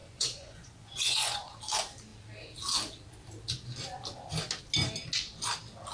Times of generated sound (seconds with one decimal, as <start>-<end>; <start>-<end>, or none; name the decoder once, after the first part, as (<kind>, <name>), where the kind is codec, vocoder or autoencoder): 0.0-1.6 (vocoder, Vocos)